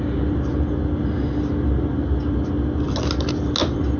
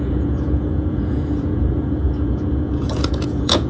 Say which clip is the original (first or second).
first